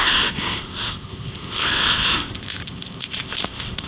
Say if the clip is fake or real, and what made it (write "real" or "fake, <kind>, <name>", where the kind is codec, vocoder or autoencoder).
fake, codec, ZipCodec